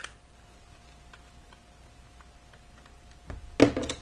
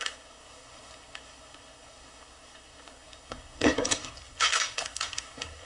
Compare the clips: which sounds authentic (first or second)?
first